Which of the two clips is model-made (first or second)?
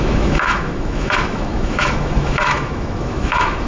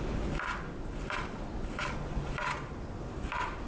first